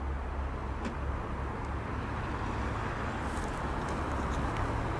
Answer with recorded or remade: recorded